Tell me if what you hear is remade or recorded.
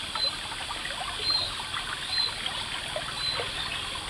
recorded